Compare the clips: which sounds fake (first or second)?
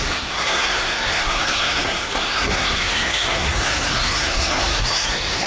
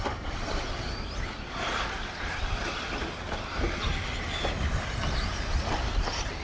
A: first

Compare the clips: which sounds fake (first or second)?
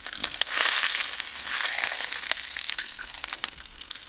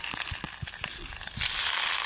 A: first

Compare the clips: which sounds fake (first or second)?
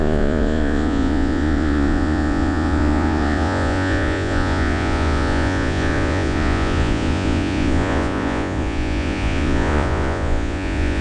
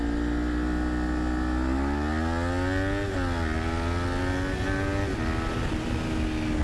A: first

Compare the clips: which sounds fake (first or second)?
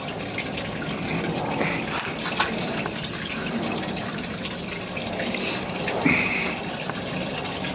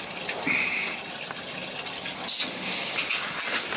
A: first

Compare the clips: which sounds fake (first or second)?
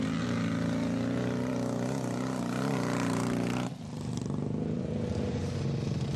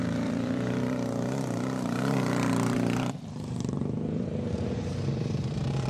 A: second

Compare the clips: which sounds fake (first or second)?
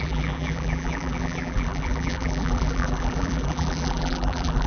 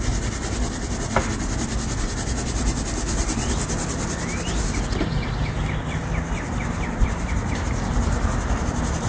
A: first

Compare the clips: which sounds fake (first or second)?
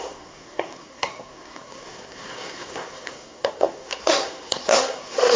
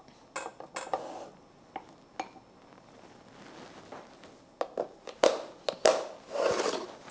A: first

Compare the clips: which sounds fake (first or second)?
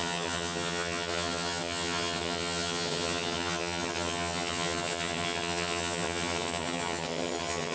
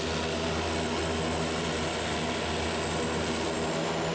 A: first